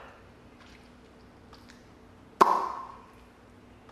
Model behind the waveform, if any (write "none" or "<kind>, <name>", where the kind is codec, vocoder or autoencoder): none